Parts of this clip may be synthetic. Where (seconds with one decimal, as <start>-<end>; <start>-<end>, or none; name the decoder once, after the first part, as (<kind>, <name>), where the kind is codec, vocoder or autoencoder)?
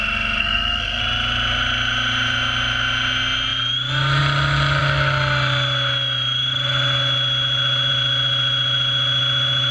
0.4-1.0 (codec, SNAC)